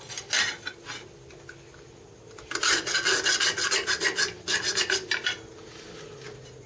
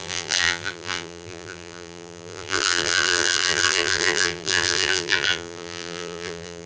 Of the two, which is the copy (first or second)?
second